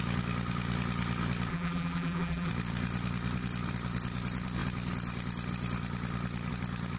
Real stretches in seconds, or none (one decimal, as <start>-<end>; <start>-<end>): 0.0-1.5; 2.5-7.0